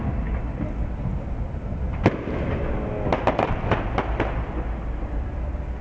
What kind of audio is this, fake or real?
real